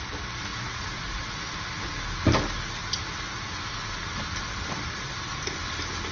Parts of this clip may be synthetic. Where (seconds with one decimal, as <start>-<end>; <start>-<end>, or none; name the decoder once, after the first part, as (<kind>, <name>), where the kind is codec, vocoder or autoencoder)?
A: 0.5-1.3 (vocoder, Vocos)